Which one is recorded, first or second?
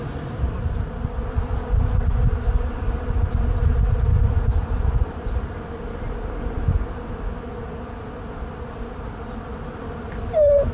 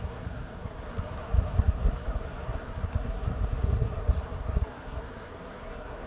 first